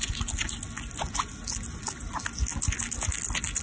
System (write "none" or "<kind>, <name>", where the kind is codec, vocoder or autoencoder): none